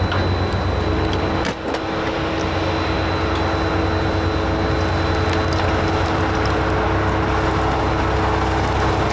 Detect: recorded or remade recorded